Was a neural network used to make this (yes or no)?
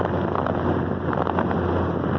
no